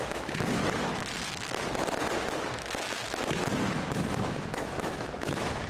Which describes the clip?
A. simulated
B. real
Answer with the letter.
A